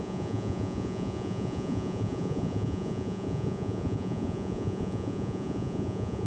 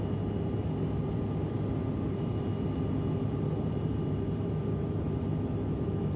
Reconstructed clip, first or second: first